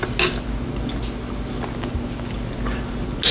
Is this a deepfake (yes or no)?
no